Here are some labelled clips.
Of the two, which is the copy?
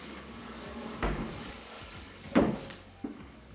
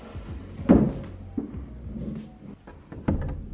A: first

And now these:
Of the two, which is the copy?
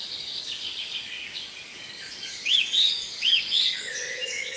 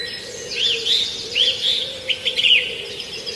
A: first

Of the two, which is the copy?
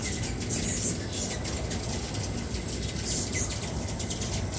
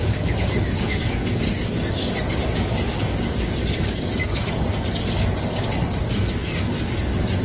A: second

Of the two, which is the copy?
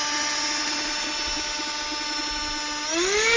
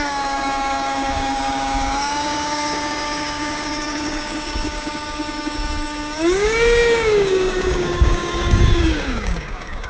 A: second